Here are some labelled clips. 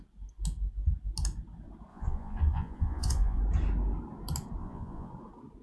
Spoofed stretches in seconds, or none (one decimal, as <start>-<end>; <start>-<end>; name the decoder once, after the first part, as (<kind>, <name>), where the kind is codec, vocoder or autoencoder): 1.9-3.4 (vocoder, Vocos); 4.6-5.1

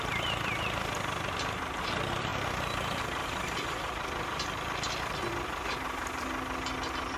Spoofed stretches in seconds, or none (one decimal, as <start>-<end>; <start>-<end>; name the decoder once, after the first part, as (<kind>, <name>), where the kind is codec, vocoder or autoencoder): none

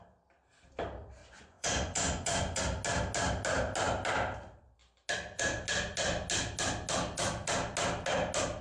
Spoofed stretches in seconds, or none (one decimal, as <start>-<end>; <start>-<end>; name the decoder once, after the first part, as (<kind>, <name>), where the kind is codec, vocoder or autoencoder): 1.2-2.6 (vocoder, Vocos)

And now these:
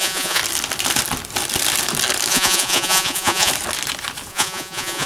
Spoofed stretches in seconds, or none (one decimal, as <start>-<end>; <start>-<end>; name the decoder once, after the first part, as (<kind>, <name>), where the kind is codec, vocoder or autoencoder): 0.0-0.4 (vocoder, Vocos); 2.3-3.5; 4.3-5.1